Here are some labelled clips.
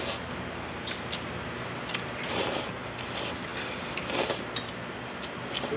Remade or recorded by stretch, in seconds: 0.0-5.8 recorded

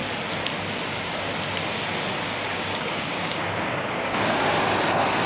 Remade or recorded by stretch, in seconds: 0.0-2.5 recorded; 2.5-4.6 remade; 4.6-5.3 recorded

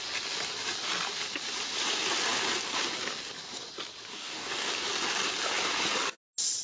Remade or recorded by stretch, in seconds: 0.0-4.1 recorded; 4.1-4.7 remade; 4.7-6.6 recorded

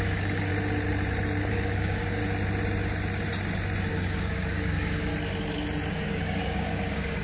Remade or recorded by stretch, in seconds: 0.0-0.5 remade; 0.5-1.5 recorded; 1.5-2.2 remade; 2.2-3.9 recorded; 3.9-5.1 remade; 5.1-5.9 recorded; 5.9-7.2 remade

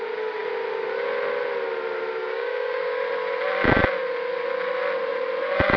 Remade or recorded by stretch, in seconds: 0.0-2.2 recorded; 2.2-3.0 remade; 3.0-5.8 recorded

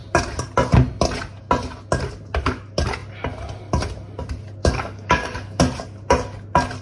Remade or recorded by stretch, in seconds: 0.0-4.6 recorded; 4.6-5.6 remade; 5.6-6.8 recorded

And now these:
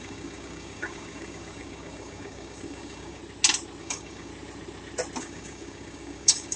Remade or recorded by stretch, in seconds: 0.0-3.2 remade; 3.2-3.8 recorded; 3.8-4.3 remade; 4.3-5.2 recorded; 5.2-6.6 remade